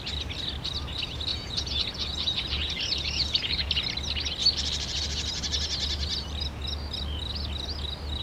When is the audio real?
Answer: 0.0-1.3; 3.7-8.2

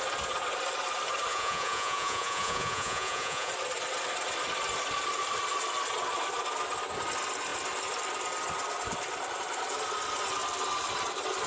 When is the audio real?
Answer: 0.0-1.3; 3.5-11.5

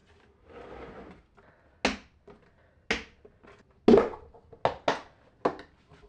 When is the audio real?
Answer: 0.0-6.1

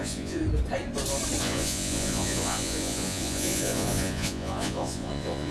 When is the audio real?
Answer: 0.4-1.4

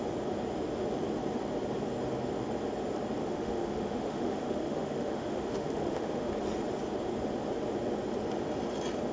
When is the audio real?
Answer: 0.0-3.2; 6.3-9.1

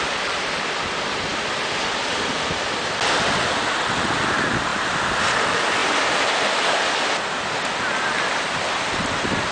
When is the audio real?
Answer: 5.8-7.0

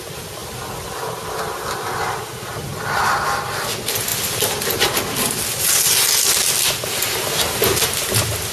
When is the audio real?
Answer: 0.0-0.4; 1.7-4.1; 5.7-8.0